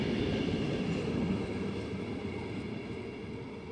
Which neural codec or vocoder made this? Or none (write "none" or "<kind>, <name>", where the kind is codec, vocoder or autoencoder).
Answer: none